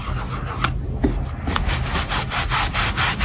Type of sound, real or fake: real